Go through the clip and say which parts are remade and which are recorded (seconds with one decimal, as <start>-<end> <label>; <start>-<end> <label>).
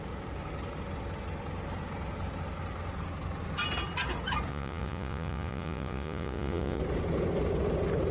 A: 0.0-4.5 recorded; 4.5-6.8 remade; 6.8-8.1 recorded